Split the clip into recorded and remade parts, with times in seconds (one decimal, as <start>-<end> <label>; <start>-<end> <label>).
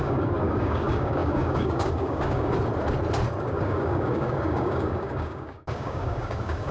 0.0-2.5 remade; 2.5-3.5 recorded; 3.5-6.7 remade